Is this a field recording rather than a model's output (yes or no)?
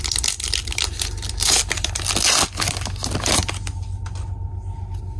yes